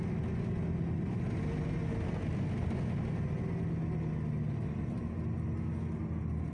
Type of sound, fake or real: real